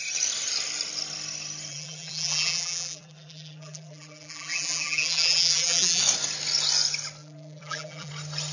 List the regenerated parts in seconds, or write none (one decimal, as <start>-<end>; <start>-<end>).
1.7-6.0; 7.2-8.1